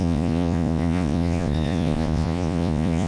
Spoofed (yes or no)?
yes